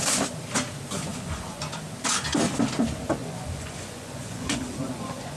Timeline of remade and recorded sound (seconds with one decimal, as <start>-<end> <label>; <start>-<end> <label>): 0.0-1.1 recorded; 1.1-1.7 remade; 1.7-3.2 recorded; 3.2-5.4 remade